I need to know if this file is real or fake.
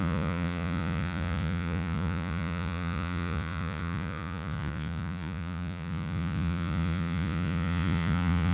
fake